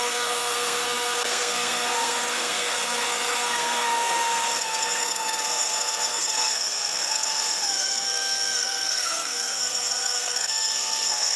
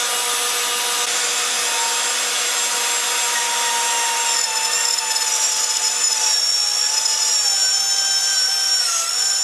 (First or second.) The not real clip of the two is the first